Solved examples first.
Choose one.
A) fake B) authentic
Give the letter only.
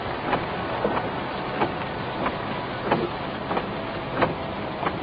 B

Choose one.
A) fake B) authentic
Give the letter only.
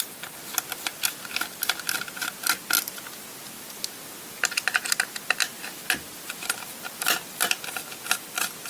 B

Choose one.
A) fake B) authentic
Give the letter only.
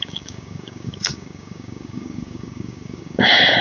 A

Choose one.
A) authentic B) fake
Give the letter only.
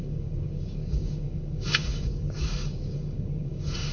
B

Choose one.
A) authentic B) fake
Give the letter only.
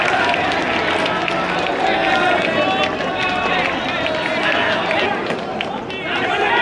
A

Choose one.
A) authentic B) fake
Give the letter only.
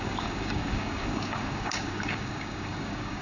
B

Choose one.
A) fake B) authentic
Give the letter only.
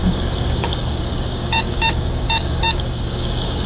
A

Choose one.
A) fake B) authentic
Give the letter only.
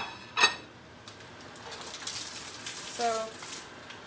B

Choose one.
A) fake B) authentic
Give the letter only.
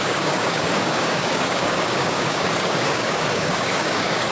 A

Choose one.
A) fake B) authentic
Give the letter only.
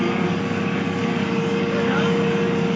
A